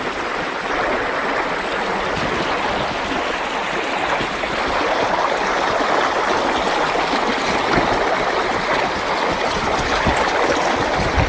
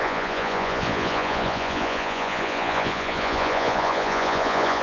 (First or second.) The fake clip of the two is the second